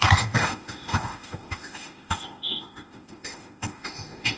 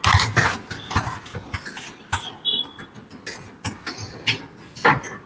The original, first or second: second